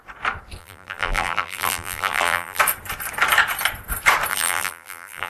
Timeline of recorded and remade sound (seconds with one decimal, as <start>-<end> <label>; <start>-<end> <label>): 0.0-0.6 recorded; 0.6-2.6 remade; 2.6-4.3 recorded; 4.3-5.3 remade